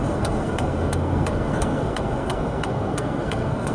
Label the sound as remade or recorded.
remade